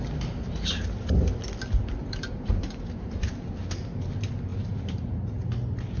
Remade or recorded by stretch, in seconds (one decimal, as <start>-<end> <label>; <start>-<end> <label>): 0.0-2.0 recorded; 2.0-3.6 remade; 3.6-4.5 recorded; 4.5-5.5 remade; 5.5-6.0 recorded